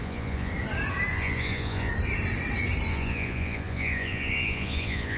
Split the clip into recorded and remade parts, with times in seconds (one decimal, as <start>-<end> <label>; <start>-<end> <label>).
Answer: 0.0-0.5 remade; 0.5-1.1 recorded; 1.1-1.9 remade; 1.9-2.9 recorded; 2.9-5.2 remade